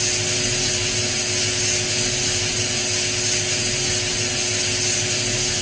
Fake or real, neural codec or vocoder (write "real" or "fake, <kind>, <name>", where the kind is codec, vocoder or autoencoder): real